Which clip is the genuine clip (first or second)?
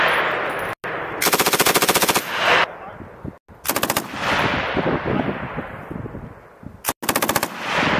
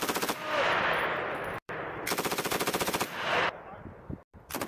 first